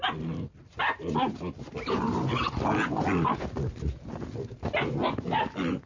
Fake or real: real